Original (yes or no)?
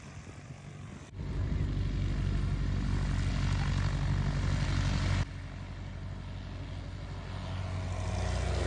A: yes